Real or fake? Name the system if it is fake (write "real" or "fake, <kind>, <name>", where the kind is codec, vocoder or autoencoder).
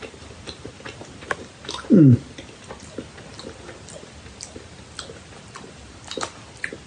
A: real